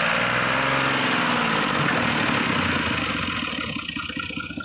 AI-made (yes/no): no